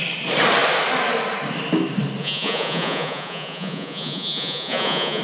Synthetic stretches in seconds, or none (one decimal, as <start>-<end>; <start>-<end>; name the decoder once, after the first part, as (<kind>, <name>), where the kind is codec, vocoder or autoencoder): 2.2-5.2 (vocoder, Vocos)